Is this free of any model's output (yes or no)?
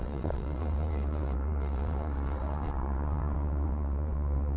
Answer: no